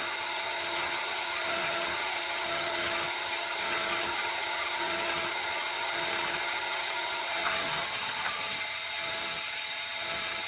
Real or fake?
fake